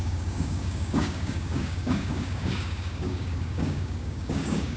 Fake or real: fake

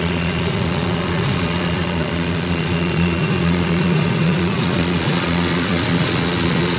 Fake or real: fake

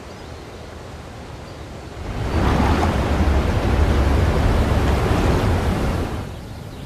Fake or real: real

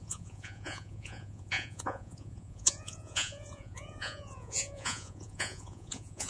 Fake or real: fake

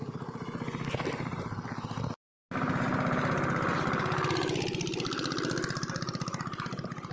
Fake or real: real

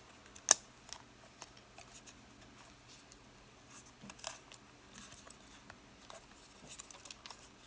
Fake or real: real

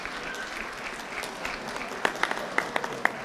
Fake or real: real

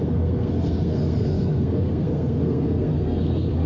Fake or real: fake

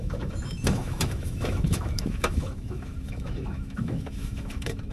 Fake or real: fake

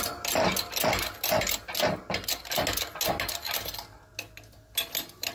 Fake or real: real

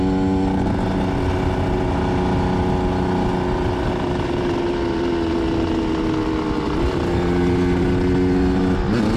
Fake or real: real